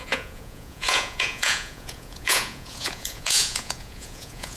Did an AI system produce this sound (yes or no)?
yes